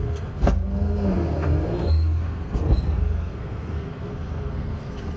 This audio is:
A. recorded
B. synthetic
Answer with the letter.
B